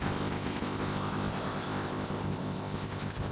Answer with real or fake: fake